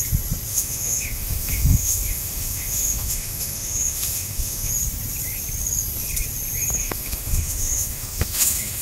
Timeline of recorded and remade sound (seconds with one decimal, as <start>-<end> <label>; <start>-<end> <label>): 0.0-0.5 recorded; 0.5-4.7 remade; 4.7-6.8 recorded; 6.8-8.8 remade